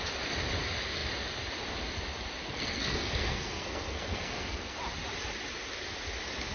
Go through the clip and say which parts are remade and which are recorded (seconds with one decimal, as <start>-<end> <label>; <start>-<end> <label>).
0.0-2.4 recorded; 2.4-4.8 remade; 4.8-6.5 recorded